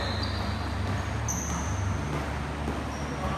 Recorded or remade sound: recorded